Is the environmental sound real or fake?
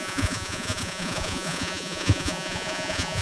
fake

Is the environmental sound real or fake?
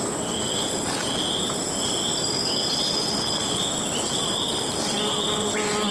real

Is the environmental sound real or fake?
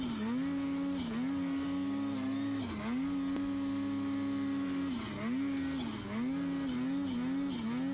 real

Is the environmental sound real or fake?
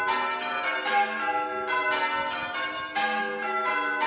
real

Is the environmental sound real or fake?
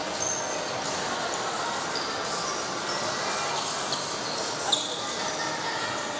real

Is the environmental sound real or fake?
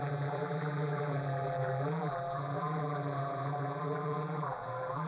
fake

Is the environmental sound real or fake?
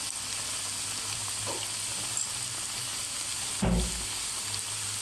real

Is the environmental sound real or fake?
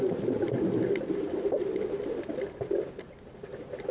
real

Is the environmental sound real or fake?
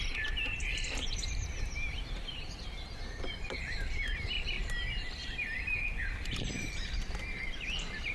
fake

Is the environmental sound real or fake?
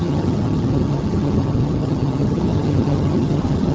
fake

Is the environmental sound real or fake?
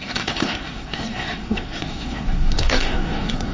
fake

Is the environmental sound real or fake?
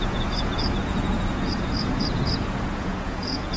fake